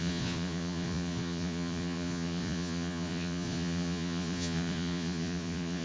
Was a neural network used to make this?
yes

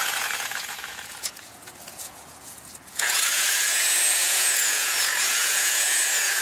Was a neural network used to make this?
yes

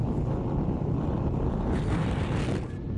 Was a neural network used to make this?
no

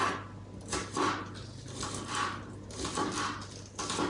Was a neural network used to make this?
no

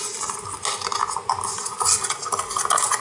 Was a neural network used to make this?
no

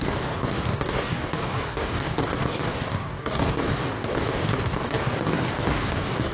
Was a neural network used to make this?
yes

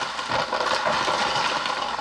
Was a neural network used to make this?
no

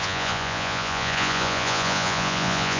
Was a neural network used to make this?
yes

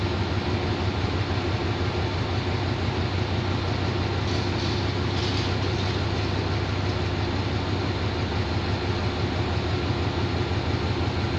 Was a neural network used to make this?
no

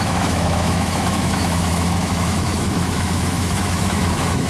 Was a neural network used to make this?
yes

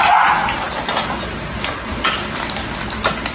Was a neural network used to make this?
no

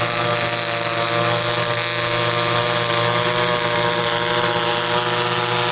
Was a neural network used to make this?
no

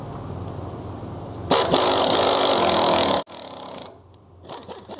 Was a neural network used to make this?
no